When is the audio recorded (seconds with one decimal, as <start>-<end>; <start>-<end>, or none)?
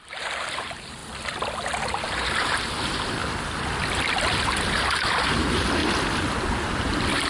1.0-1.9; 3.2-4.3; 5.8-6.4